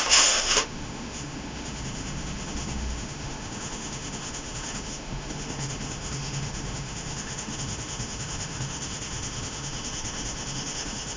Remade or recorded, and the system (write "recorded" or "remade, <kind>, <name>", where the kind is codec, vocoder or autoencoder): remade, autoencoder, DAC-VAE